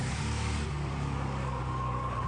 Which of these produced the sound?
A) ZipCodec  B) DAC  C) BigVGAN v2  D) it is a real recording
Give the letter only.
B